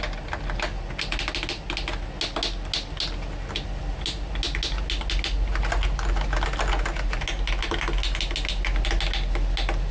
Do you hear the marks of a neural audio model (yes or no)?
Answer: no